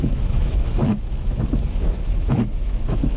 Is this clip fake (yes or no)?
yes